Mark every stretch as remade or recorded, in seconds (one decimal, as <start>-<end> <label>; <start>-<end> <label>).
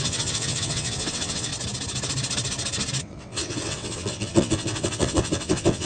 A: 0.0-1.5 remade; 1.5-3.0 recorded; 3.0-5.9 remade